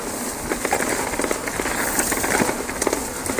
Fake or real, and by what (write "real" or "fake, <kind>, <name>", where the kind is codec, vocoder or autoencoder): real